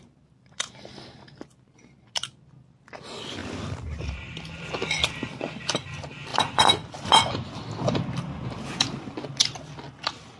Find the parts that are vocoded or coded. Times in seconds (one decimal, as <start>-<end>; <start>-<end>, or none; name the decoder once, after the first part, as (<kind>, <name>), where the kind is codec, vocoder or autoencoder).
3.4-5.0 (vocoder, BigVGAN v2); 6.3-9.3